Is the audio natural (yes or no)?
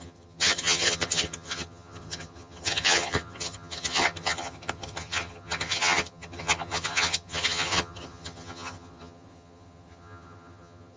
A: no